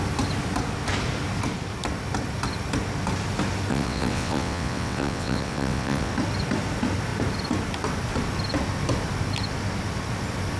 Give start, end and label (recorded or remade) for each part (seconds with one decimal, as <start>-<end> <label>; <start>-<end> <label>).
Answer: 0.0-3.7 recorded; 3.7-6.1 remade; 6.1-10.6 recorded